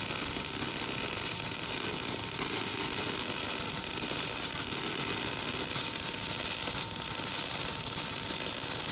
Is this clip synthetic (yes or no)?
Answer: no